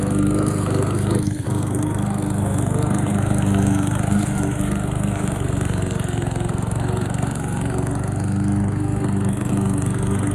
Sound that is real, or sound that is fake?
fake